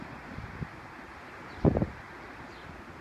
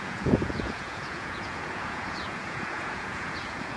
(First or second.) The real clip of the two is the first